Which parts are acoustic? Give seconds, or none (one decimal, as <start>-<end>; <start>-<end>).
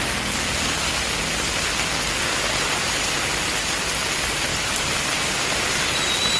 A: 0.0-4.5; 5.8-6.4